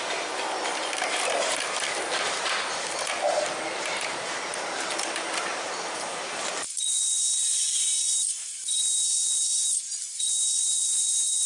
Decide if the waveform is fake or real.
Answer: fake